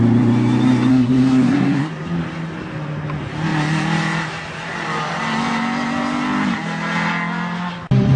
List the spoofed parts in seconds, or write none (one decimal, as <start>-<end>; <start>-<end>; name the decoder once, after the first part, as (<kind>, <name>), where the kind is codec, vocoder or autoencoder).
0.9-1.9 (codec, SNAC)